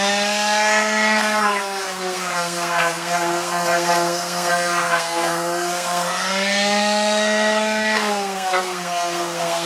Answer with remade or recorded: remade